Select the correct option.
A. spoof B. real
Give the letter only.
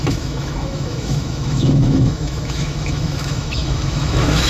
A